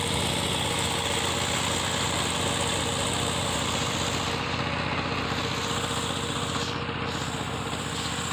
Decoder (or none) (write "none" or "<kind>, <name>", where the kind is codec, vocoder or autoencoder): none